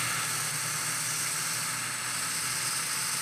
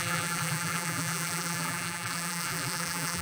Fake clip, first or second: second